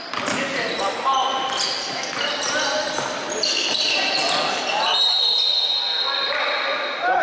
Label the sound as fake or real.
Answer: real